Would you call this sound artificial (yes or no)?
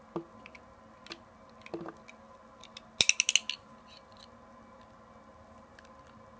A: no